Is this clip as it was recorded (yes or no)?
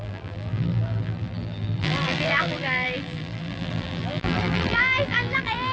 no